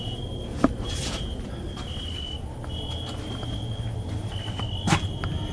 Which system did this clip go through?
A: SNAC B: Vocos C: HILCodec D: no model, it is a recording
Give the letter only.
D